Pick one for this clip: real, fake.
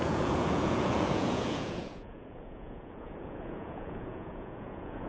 fake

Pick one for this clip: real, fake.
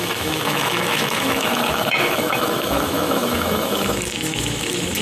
fake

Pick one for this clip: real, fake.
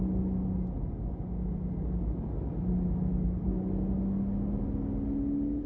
real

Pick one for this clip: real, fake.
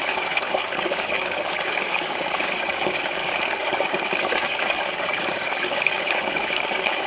fake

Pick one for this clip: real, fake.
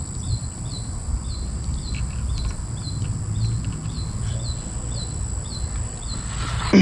real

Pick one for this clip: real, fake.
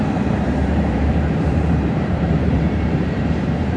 fake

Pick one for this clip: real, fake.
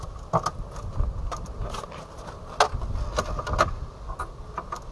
real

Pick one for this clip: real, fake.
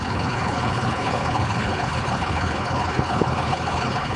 fake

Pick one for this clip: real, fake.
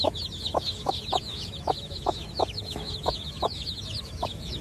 fake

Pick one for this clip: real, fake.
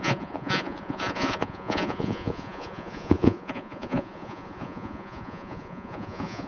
fake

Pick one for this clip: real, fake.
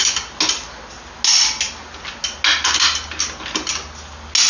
real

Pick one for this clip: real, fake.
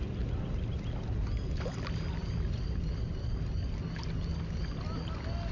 real